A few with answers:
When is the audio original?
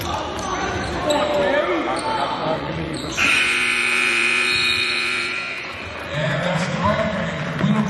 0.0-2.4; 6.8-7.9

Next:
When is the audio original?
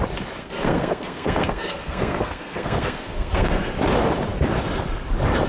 0.0-0.4; 3.7-5.5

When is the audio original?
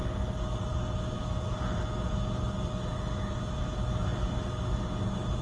0.0-5.4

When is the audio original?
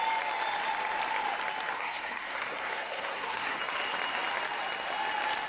0.0-1.7; 3.6-5.5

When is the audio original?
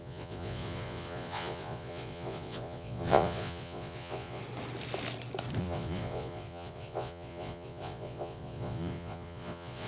4.4-5.6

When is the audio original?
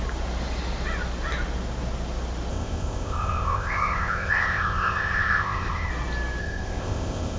0.0-2.5; 5.9-6.4